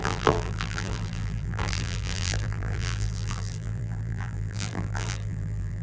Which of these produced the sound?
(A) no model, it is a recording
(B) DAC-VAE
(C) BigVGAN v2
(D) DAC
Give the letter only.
C